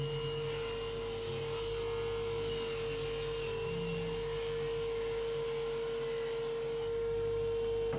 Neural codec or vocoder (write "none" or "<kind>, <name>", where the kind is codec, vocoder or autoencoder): none